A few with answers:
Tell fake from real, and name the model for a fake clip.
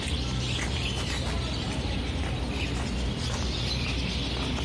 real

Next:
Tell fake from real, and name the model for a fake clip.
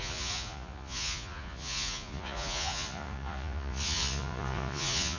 fake, vocoder, Vocos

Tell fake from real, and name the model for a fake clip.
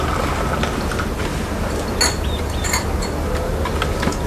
real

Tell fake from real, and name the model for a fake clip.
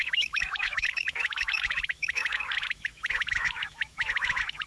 fake, autoencoder, DAC-VAE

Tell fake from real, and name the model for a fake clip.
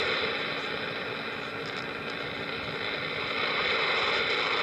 real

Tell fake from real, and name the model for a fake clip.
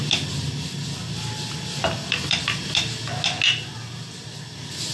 real